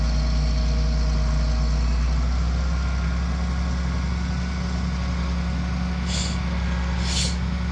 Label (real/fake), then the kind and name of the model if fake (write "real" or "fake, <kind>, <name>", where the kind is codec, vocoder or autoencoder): real